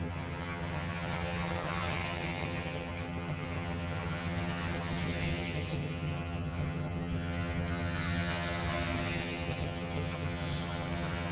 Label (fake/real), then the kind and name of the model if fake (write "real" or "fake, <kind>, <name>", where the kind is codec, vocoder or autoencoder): fake, vocoder, HiFi-GAN